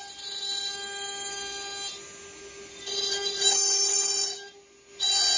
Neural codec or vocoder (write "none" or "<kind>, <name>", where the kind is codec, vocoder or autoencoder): none